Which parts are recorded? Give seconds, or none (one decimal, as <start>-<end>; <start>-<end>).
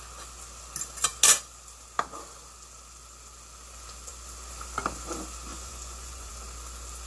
0.0-5.5; 6.3-7.1